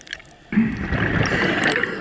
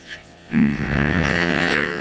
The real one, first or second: first